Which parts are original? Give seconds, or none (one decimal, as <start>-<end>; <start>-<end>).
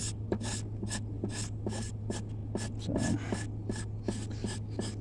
0.0-5.0